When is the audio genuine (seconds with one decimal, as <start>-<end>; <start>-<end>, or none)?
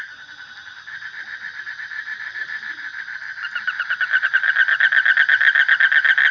0.0-0.7; 4.5-6.3